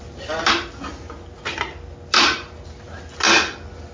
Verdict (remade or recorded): recorded